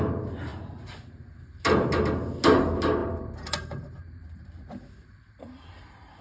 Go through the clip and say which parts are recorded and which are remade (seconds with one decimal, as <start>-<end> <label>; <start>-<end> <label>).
0.0-3.0 recorded; 3.0-4.4 remade; 4.4-6.2 recorded